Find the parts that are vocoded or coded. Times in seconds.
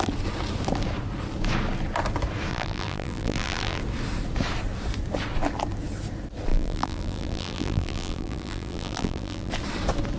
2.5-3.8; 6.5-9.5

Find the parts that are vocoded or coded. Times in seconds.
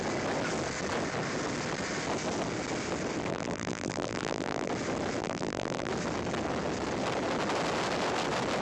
3.3-4.7; 5.2-5.9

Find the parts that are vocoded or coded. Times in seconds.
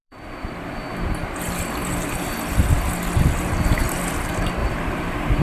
0.0-0.6; 4.6-5.4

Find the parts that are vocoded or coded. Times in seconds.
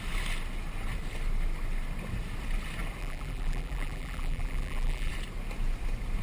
3.0-5.1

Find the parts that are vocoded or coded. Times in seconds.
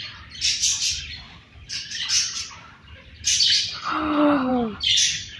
0.7-3.8